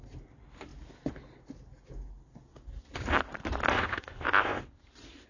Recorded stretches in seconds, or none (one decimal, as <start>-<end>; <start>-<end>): 0.0-3.7; 4.6-5.3